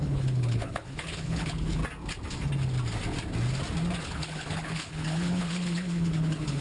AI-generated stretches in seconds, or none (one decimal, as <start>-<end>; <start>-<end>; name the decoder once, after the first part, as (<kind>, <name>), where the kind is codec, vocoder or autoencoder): 0.0-1.8 (codec, HILCodec); 4.0-6.6